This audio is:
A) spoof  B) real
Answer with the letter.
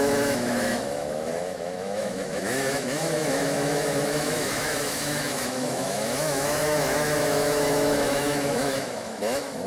A